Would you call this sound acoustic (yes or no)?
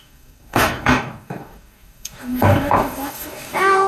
no